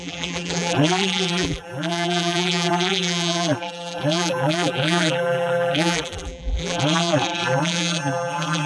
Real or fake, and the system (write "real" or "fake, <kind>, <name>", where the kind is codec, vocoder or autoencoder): fake, vocoder, BigVGAN v2